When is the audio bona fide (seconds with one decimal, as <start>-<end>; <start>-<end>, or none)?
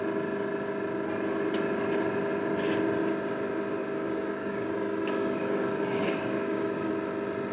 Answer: 0.0-3.8; 6.9-7.5